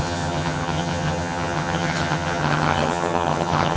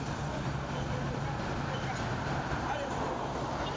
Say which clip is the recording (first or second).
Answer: second